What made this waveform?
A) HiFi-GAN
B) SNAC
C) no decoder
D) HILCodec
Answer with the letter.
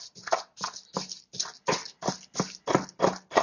C